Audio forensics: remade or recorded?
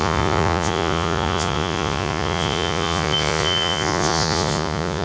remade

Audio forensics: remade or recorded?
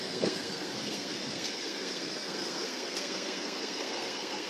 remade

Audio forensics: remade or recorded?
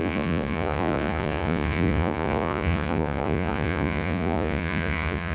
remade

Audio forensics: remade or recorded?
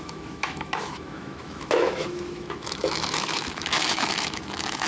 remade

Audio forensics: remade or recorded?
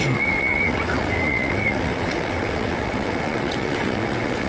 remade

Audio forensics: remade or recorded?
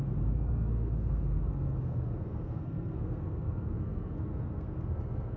remade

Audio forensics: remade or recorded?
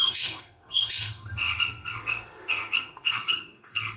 remade